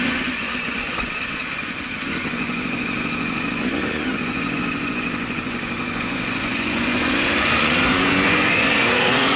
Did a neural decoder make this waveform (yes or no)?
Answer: yes